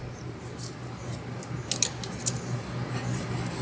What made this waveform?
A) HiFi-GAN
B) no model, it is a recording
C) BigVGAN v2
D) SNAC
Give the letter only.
B